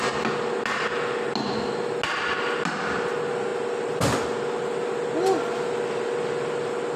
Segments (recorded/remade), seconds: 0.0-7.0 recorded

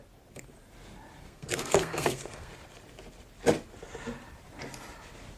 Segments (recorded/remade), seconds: 0.0-1.2 recorded; 1.2-2.5 remade; 2.5-5.4 recorded